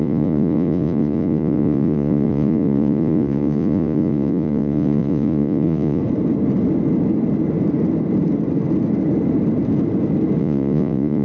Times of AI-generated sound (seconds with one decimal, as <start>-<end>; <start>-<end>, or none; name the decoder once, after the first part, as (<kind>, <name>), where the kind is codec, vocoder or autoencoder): 0.0-6.0 (vocoder, Vocos); 10.4-11.2